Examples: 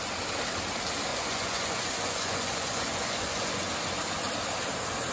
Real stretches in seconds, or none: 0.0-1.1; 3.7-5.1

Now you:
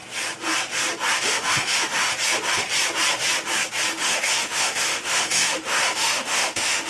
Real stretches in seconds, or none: 0.0-1.2; 2.1-3.9